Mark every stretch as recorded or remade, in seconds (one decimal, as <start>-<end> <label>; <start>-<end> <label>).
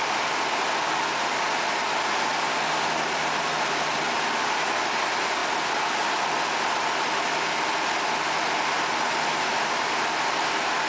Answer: 0.0-10.9 recorded